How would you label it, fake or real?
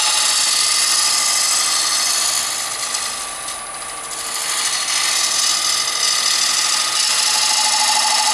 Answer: real